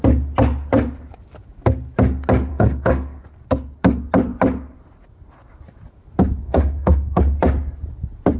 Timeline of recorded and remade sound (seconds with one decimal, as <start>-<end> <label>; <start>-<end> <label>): 0.0-2.5 recorded; 2.5-3.2 remade; 3.2-6.4 recorded; 6.4-7.2 remade; 7.2-8.4 recorded